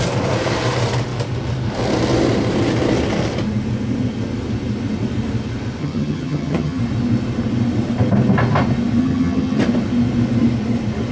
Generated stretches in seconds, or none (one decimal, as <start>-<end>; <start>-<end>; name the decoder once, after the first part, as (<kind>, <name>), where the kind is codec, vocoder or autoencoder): 5.8-6.8 (vocoder, HiFi-GAN); 9.0-9.6